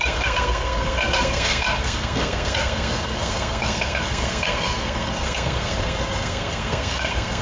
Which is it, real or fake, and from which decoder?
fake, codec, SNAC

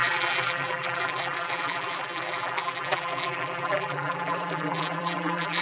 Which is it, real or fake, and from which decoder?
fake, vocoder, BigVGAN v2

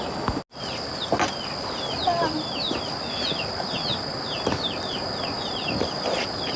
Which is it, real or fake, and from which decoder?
real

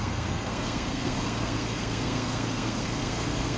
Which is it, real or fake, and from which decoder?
fake, codec, SNAC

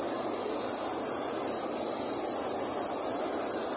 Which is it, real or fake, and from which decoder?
real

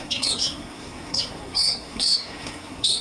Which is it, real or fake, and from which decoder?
fake, codec, SNAC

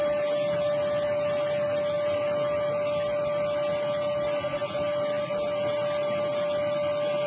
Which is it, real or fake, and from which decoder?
real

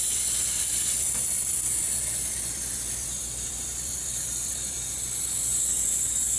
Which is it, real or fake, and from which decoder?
fake, vocoder, BigVGAN v2